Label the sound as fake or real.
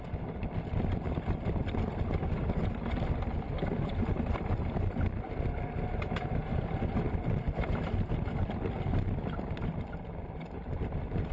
real